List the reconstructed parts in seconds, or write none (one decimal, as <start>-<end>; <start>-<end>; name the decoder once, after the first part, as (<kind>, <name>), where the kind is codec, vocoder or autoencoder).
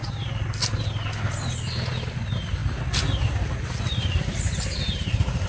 none